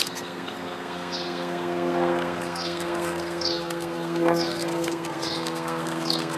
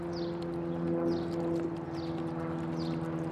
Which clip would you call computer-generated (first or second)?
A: first